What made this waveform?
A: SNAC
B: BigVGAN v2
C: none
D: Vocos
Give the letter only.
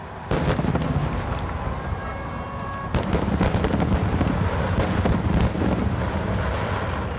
C